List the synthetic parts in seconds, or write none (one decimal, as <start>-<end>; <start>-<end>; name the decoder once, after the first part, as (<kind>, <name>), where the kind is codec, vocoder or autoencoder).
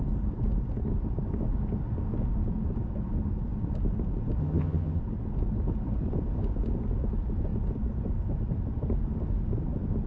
4.4-5.0 (vocoder, HiFi-GAN)